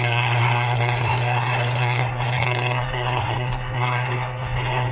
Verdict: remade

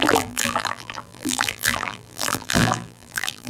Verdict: remade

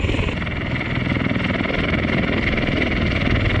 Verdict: recorded